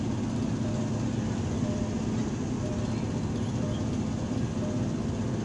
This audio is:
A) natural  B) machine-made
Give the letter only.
A